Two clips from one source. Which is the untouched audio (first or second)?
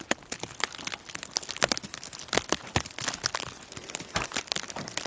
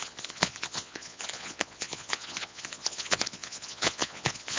first